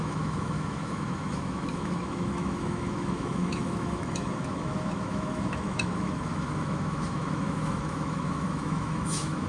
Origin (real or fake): fake